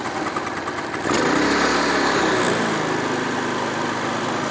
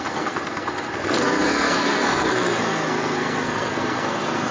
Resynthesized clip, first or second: second